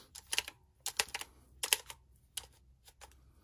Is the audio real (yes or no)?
yes